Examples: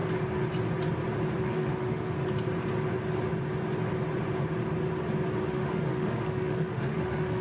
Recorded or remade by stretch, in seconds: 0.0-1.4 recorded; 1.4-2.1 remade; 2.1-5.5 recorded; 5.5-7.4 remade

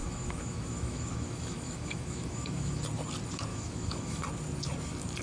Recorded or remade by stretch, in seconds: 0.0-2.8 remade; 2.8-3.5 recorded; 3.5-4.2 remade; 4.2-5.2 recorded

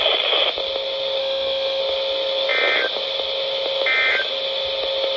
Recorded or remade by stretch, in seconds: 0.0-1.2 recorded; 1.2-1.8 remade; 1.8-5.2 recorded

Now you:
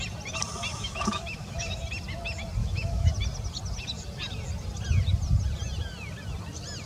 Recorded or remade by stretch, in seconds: 0.0-0.7 recorded; 0.7-1.8 remade; 1.8-2.6 recorded; 2.6-3.1 remade; 3.1-6.9 recorded